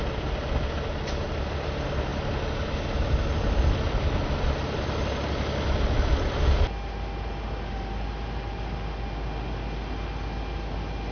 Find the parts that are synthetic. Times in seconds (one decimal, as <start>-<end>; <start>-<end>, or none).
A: none